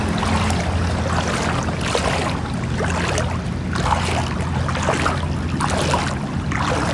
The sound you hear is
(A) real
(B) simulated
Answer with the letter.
A